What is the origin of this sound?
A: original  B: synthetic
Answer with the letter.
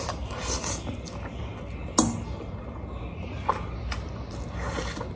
A